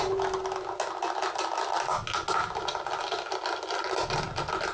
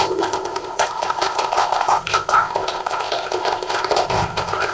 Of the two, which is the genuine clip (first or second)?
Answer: first